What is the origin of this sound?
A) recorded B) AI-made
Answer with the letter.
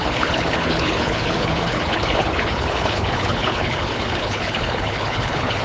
B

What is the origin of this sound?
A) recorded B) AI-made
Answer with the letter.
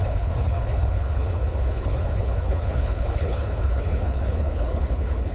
B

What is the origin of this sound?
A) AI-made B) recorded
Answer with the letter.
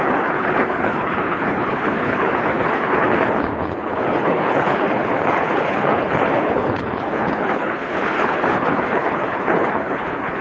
A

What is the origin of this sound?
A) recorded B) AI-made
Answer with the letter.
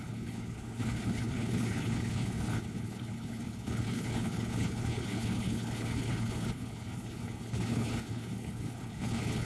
B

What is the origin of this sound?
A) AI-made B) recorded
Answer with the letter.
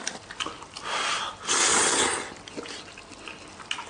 B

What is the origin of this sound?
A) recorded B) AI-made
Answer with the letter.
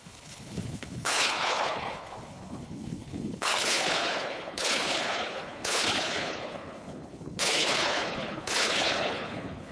B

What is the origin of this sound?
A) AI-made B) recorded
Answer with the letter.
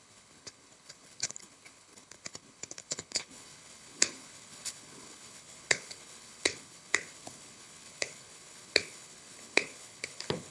A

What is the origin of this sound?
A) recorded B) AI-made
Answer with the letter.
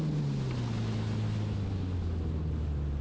A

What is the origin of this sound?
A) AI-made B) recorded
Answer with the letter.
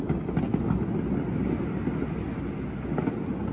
B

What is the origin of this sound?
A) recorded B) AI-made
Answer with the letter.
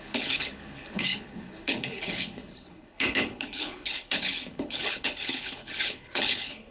B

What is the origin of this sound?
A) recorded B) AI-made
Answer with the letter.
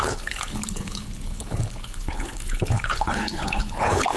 B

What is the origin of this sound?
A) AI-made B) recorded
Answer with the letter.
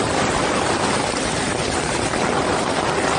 B